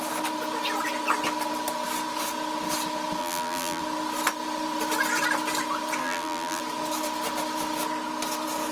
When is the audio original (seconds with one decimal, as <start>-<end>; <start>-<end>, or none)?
0.0-3.2; 3.8-6.0; 6.6-8.7